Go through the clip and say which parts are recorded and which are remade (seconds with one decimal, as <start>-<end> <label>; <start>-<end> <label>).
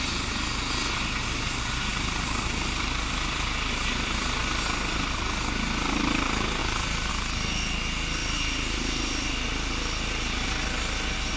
0.0-1.9 recorded; 1.9-4.4 remade; 4.4-6.6 recorded; 6.6-7.1 remade; 7.1-8.2 recorded; 8.2-9.3 remade; 9.3-11.4 recorded